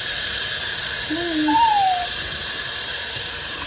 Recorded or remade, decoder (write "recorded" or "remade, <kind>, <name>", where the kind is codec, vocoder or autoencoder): remade, vocoder, BigVGAN v2